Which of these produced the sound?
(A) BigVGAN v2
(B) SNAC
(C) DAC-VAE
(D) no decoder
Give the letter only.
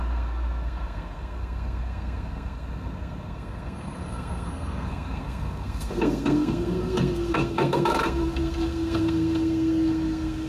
B